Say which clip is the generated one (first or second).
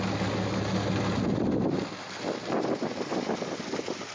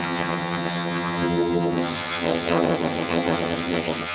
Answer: second